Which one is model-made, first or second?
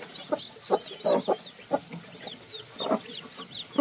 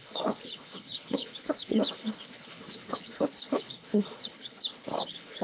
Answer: second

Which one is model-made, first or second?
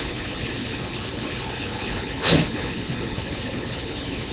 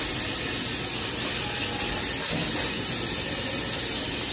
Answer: first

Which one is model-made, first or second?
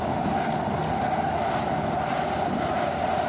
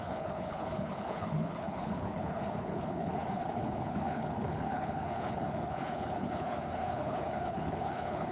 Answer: second